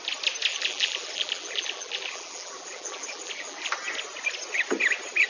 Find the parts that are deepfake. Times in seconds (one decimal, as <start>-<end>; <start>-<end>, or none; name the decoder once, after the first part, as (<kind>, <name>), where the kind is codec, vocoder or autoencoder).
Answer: 0.5-3.7 (vocoder, BigVGAN v2)